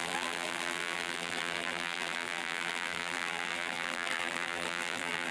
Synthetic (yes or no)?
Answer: yes